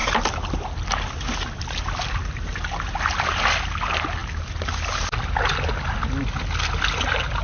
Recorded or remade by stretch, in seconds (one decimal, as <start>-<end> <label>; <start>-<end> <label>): 0.0-7.4 recorded